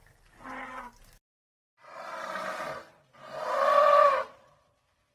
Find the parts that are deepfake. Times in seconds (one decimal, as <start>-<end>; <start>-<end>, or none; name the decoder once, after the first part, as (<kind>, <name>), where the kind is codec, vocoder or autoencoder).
none